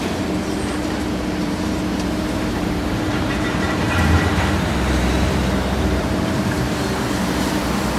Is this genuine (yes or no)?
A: no